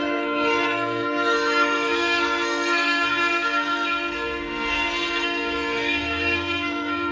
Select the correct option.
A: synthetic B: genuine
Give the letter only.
A